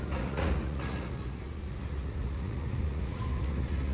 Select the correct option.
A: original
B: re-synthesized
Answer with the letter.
B